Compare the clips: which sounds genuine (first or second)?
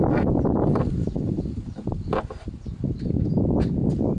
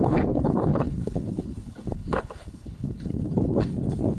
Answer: first